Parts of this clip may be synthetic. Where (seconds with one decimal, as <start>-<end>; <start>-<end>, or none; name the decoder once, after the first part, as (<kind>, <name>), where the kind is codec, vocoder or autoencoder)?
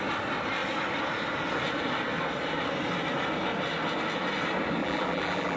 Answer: 4.8-5.6 (vocoder, BigVGAN v2)